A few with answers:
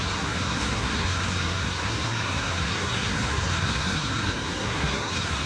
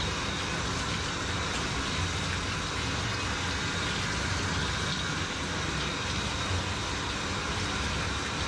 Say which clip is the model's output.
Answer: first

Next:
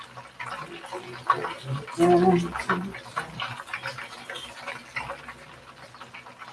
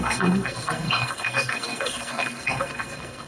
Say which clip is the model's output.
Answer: second